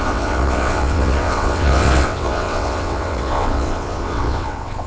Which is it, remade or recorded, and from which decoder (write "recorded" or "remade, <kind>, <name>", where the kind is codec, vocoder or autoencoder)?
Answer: remade, vocoder, WaveNeXt